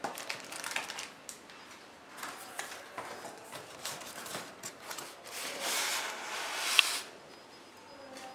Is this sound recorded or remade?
recorded